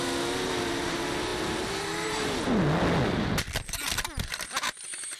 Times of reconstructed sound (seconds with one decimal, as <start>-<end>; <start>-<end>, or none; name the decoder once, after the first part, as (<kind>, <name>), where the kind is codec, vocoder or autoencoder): none